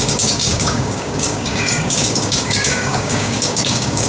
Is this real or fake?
fake